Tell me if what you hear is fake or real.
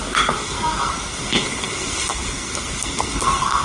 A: fake